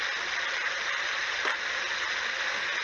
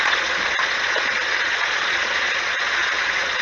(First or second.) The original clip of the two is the first